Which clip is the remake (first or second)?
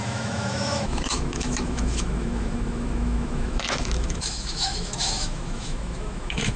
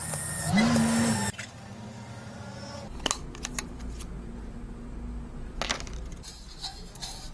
first